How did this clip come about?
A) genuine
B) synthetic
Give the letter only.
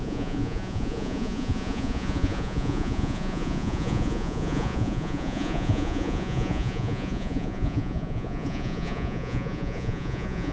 B